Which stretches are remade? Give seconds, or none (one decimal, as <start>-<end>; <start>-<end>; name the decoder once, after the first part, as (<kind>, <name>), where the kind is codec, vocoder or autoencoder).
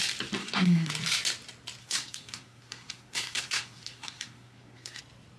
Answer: 0.4-0.9 (codec, SNAC); 1.8-5.0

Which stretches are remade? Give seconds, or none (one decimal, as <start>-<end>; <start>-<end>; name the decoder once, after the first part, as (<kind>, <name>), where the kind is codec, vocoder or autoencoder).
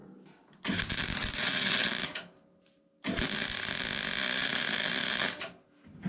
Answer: none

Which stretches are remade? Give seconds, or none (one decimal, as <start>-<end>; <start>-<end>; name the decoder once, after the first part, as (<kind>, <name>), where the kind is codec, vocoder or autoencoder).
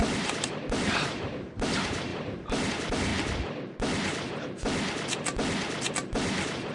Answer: 0.0-3.1 (vocoder, BigVGAN v2); 5.9-6.7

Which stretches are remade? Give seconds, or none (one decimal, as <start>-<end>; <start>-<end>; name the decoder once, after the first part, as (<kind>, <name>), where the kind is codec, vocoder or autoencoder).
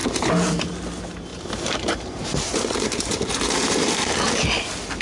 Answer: 0.0-0.6 (vocoder, BigVGAN v2); 1.3-4.3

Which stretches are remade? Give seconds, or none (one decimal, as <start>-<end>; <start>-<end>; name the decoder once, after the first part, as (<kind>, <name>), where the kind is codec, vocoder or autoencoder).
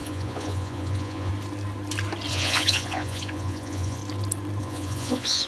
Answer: 0.0-1.3 (vocoder, Vocos); 2.3-4.0; 4.6-5.5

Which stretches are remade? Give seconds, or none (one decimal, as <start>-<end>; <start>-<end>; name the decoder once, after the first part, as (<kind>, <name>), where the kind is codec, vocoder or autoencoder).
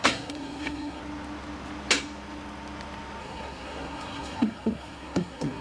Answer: 0.0-1.0 (codec, SNAC); 3.2-5.6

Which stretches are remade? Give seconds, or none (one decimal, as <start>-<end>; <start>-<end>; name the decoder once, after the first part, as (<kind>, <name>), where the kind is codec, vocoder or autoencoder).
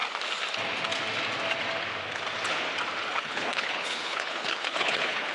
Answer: 3.2-5.3 (codec, HILCodec)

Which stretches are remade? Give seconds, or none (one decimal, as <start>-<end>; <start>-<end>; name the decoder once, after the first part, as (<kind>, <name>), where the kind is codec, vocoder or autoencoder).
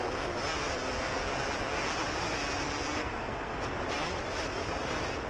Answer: 3.0-3.6 (codec, SNAC)